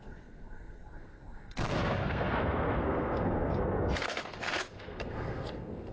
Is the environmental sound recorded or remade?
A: remade